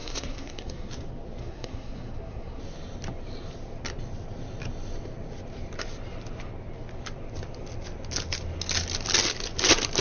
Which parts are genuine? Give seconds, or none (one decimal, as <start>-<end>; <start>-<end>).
0.9-1.4; 2.6-10.0